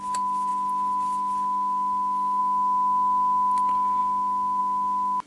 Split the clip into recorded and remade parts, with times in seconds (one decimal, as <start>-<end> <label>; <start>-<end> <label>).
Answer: 0.0-5.3 recorded